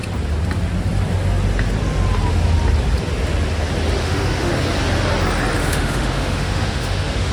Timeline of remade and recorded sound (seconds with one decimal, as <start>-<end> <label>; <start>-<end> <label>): 0.0-4.0 recorded; 4.0-4.5 remade; 4.5-5.6 recorded; 5.6-7.3 remade